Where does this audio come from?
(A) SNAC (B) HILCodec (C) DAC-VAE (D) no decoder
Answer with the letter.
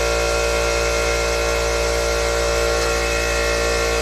D